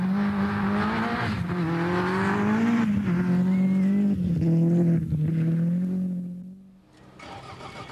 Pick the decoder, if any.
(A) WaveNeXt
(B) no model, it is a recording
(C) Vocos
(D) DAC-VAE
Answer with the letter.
B